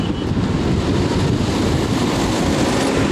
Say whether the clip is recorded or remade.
recorded